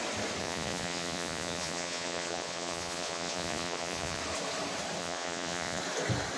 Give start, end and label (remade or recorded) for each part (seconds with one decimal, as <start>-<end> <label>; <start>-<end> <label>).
0.0-0.4 recorded; 0.4-4.2 remade; 4.2-5.0 recorded; 5.0-5.8 remade; 5.8-6.4 recorded